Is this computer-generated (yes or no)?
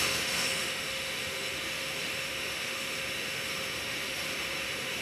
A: yes